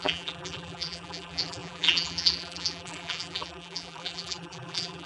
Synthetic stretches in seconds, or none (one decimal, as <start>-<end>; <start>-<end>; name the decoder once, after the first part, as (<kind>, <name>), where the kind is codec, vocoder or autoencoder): 0.0-5.1 (vocoder, BigVGAN v2)